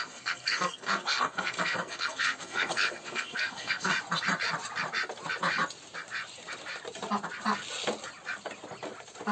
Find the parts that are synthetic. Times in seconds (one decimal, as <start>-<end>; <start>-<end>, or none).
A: 0.0-3.9